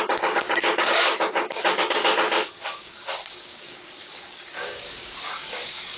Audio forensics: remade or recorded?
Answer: remade